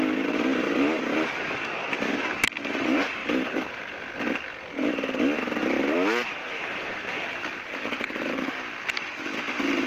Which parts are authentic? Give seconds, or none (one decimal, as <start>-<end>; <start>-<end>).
0.0-3.2; 3.8-6.4; 8.6-9.9